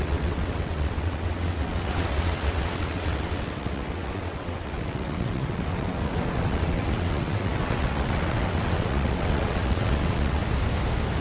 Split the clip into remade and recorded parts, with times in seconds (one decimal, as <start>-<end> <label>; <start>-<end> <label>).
0.0-10.4 remade; 10.4-11.2 recorded